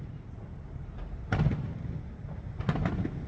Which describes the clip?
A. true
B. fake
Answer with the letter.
A